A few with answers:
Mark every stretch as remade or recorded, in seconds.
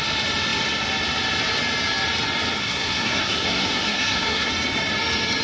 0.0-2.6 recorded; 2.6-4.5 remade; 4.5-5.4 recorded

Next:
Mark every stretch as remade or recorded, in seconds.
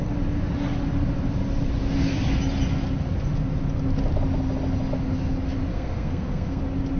0.0-5.7 recorded; 5.7-6.6 remade; 6.6-7.0 recorded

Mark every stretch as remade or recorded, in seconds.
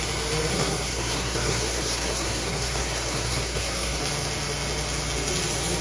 0.0-0.5 recorded; 0.5-4.0 remade; 4.0-5.8 recorded